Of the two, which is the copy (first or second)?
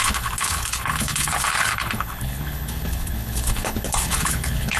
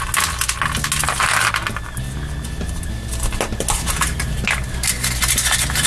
first